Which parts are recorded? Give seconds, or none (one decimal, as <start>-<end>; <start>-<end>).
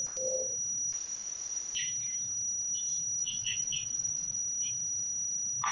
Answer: 0.0-3.2; 4.4-5.7